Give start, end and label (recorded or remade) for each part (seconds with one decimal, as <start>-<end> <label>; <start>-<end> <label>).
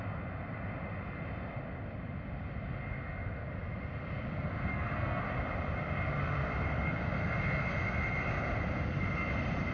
0.0-4.7 recorded; 4.7-5.2 remade; 5.2-9.7 recorded